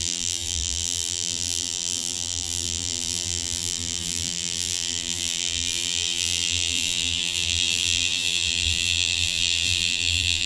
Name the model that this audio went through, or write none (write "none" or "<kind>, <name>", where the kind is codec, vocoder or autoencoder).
vocoder, BigVGAN v2